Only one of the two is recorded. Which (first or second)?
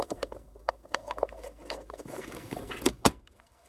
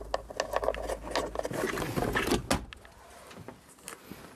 second